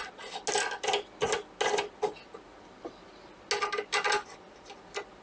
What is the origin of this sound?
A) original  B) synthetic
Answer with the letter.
A